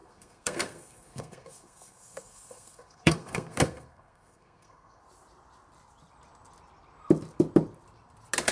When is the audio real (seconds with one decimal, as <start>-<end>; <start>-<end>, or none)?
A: 5.0-8.5